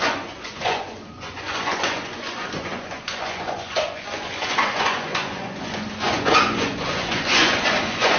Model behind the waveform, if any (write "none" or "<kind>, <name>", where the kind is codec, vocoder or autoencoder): vocoder, Vocos